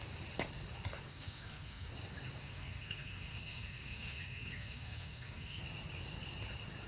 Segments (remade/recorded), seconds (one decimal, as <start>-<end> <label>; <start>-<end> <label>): 0.0-1.1 recorded; 1.1-1.9 remade; 1.9-2.4 recorded; 2.4-5.6 remade; 5.6-6.9 recorded